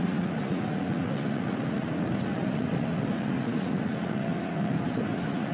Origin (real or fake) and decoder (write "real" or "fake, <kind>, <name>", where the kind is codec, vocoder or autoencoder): fake, vocoder, Vocos